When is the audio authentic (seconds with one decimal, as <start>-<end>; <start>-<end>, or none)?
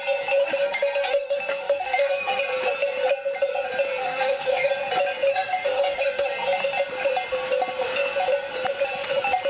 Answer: 0.0-0.4; 2.4-4.0; 4.7-5.3; 6.3-9.5